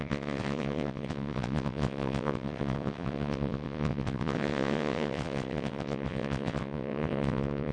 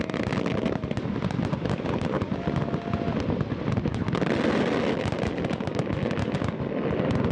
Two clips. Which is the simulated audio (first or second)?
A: first